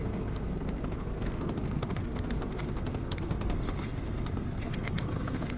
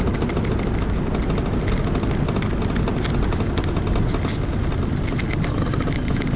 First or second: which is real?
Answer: second